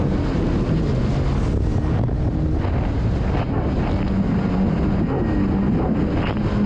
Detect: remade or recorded recorded